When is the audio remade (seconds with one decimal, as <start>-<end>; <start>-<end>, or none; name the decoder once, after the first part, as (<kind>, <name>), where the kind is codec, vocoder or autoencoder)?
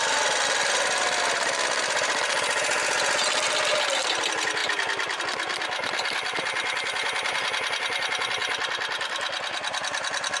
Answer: none